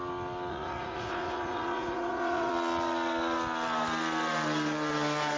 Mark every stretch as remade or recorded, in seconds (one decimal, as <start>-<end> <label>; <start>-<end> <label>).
0.0-0.5 recorded; 0.5-2.5 remade; 2.5-5.4 recorded